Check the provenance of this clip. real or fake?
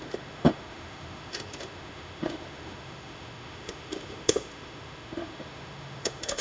fake